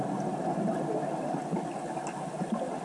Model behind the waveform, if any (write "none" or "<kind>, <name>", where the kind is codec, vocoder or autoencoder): none